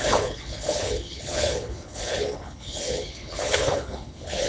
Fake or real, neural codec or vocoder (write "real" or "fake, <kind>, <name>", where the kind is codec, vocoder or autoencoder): fake, codec, HILCodec